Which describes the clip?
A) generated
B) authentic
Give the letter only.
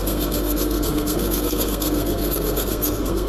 A